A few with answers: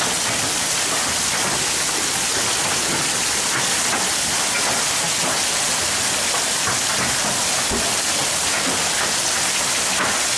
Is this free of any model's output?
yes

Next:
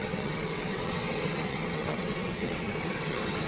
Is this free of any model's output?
no